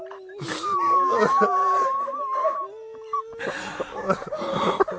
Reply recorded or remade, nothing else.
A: recorded